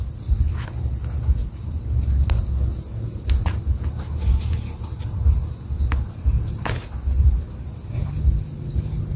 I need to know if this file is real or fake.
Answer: real